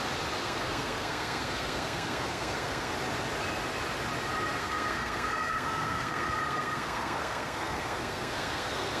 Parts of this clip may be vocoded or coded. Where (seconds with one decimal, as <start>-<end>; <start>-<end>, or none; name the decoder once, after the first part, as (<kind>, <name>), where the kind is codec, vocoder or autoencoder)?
0.4-2.9 (codec, SNAC); 4.6-9.0